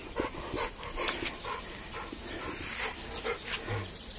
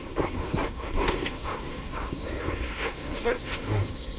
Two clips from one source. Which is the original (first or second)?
first